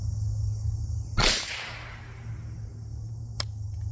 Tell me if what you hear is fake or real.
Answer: real